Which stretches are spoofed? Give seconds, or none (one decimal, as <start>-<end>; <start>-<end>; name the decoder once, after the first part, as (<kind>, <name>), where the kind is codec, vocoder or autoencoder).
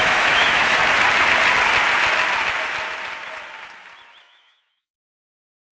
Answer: 0.0-0.8 (autoencoder, DAC-VAE); 4.2-5.7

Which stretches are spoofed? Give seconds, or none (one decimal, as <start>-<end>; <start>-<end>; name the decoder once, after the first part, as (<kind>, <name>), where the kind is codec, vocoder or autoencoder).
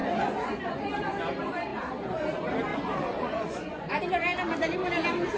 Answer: 0.0-0.9 (vocoder, Vocos); 2.7-4.0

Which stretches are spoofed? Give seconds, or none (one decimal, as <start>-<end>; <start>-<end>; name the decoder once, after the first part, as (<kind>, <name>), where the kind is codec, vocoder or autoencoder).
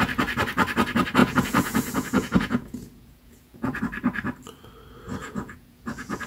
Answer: 1.2-3.8 (vocoder, Vocos); 5.2-6.3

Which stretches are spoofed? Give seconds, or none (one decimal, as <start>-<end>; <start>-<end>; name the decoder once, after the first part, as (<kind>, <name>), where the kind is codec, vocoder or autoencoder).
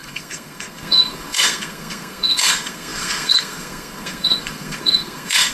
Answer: 0.0-5.5 (codec, SNAC)